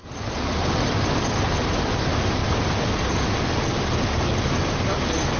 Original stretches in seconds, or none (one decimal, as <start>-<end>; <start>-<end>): 0.0-5.4